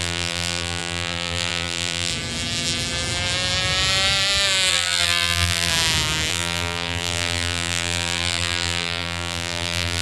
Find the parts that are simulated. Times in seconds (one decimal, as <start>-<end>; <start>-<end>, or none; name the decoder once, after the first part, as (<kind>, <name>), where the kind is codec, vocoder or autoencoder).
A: 0.0-2.1 (vocoder, BigVGAN v2); 4.7-5.7; 6.3-10.0